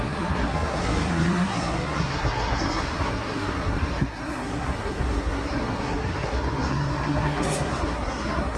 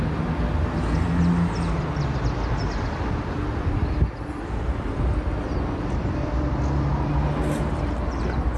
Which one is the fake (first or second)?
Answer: first